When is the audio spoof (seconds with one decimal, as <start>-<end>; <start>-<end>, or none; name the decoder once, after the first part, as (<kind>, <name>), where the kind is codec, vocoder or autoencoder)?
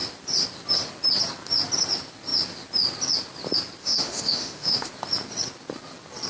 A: 3.8-4.9 (autoencoder, DAC-VAE)